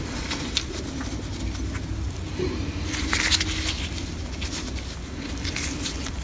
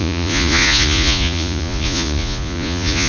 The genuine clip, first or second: first